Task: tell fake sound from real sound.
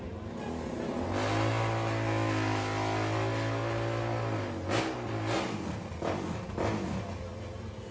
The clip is real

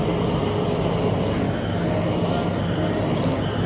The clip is real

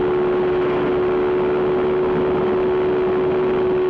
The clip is real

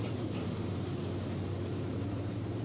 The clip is real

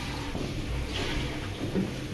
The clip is real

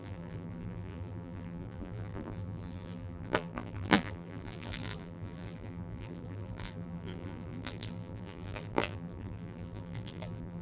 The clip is fake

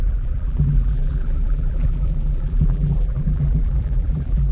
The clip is fake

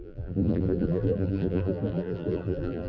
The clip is fake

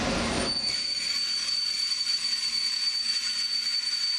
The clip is fake